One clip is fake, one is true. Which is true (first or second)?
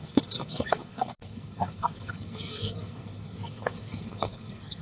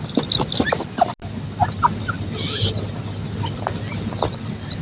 second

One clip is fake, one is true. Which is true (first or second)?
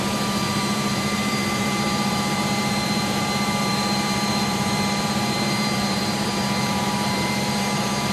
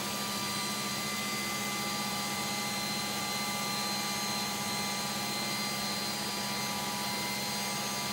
second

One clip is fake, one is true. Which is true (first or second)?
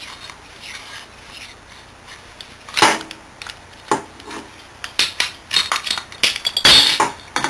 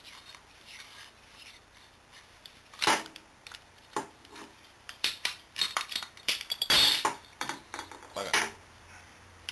first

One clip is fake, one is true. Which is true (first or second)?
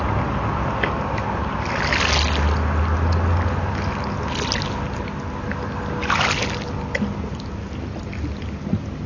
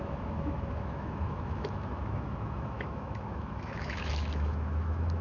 first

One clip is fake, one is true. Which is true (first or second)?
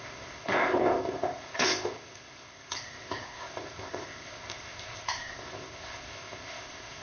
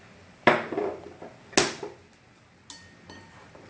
second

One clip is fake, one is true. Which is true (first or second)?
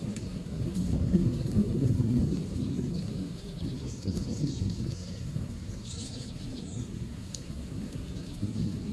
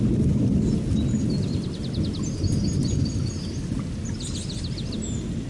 second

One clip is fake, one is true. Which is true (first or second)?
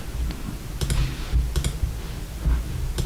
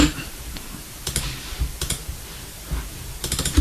first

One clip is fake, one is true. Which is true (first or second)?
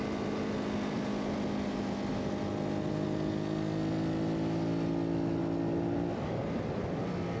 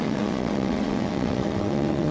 first